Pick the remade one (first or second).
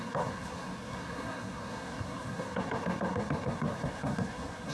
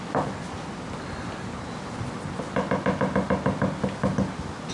first